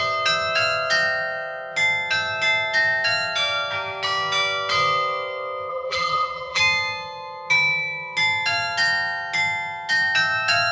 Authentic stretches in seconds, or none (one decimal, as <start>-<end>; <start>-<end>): 0.0-5.7; 6.6-10.7